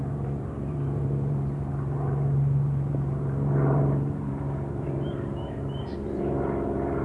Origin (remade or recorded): remade